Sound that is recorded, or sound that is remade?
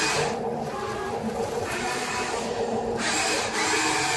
recorded